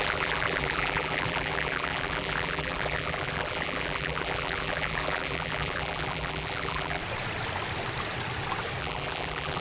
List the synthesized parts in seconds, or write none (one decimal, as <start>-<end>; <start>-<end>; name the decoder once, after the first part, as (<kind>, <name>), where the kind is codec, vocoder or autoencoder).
0.0-7.0 (vocoder, BigVGAN v2); 8.8-9.6